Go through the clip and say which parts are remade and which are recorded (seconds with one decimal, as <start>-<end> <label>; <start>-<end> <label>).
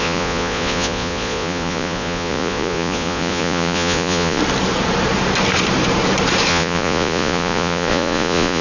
0.0-4.4 remade; 4.4-6.5 recorded; 6.5-8.6 remade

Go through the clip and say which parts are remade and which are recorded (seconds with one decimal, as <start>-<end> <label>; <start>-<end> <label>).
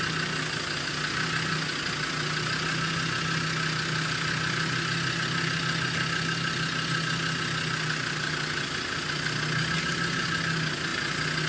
0.0-11.5 recorded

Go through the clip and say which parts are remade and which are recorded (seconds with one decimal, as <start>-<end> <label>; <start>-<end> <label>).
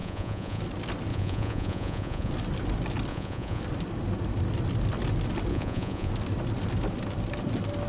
0.0-0.6 remade; 0.6-1.1 recorded; 1.1-2.3 remade; 2.3-3.1 recorded; 3.1-3.6 remade; 3.6-5.5 recorded; 5.5-6.1 remade; 6.1-7.9 recorded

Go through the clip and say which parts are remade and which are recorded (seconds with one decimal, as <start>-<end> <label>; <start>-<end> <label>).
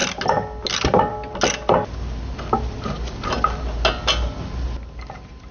0.0-5.5 recorded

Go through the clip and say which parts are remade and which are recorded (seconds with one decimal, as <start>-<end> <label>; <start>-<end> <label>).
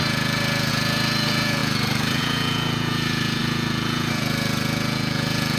0.0-5.6 remade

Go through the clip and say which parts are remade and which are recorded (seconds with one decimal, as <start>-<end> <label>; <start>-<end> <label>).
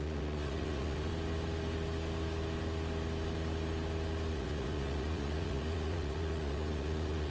0.0-1.1 remade; 1.1-4.3 recorded; 4.3-7.3 remade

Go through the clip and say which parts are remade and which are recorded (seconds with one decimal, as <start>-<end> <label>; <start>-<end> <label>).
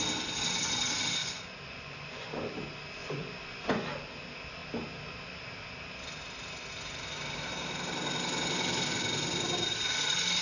0.0-1.2 recorded; 1.2-2.4 remade; 2.4-3.0 recorded; 3.0-3.9 remade; 3.9-10.4 recorded